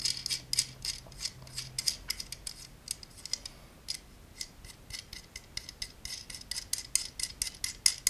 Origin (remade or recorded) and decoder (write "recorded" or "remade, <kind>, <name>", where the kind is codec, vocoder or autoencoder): recorded